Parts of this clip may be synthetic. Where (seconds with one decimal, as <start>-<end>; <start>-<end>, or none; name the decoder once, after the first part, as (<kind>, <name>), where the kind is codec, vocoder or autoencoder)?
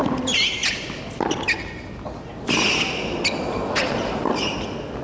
none